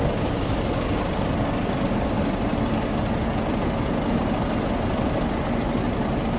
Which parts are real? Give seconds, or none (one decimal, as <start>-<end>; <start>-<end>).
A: 0.0-6.4